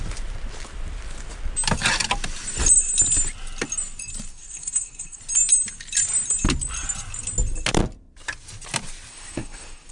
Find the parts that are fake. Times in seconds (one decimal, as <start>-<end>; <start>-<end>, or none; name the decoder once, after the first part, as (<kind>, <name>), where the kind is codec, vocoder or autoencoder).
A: 4.3-5.2 (codec, SNAC); 9.1-9.9